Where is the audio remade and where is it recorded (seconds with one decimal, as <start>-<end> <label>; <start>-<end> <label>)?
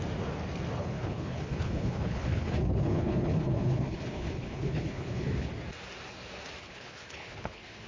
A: 0.0-0.8 recorded; 0.8-5.5 remade; 5.5-6.6 recorded; 6.6-7.9 remade